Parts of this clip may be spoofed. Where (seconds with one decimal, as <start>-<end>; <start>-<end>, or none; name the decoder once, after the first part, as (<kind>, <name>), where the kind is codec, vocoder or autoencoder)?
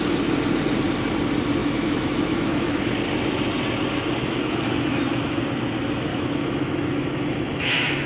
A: 1.6-2.8 (autoencoder, DAC-VAE); 4.2-5.4; 6.1-8.1